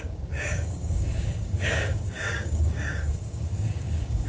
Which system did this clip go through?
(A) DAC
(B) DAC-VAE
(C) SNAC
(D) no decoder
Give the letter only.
A